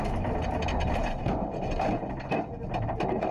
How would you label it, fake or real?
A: real